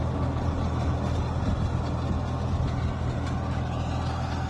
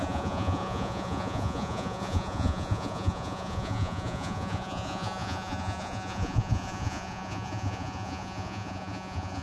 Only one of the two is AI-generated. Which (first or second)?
second